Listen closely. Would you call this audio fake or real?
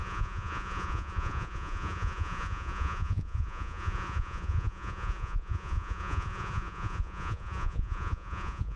fake